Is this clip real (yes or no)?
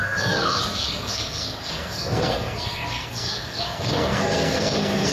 no